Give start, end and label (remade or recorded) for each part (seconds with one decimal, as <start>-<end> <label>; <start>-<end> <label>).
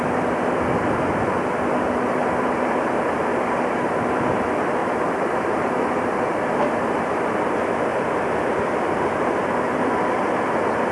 0.0-3.3 recorded; 3.3-4.2 remade; 4.2-4.8 recorded; 4.8-6.7 remade; 6.7-7.9 recorded; 7.9-9.5 remade; 9.5-10.9 recorded